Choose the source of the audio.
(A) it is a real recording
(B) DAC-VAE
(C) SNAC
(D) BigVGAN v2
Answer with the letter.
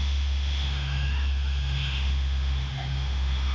B